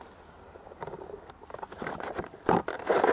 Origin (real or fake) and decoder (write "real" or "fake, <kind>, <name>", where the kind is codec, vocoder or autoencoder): real